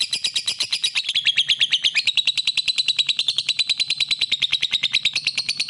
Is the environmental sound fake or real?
fake